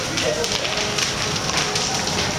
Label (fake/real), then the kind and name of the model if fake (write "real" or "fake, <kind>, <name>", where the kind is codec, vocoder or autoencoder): real